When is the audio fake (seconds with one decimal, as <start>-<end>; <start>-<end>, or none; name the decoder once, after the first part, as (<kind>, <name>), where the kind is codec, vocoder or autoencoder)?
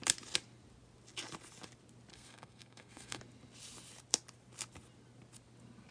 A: 2.1-3.2 (codec, SNAC)